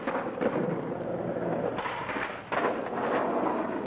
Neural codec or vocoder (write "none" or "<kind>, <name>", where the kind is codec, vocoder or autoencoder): none